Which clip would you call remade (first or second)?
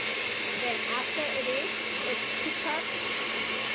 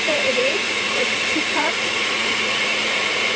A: second